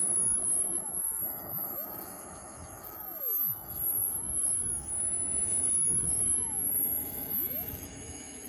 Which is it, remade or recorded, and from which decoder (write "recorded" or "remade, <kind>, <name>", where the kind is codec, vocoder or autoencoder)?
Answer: remade, autoencoder, DAC-VAE